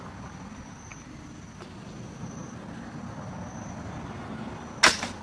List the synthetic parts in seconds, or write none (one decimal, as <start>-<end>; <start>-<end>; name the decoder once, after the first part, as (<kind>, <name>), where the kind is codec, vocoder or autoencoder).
none